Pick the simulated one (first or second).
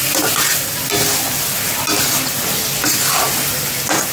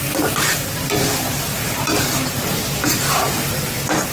second